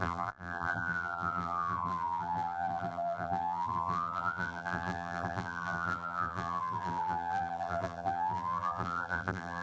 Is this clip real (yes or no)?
no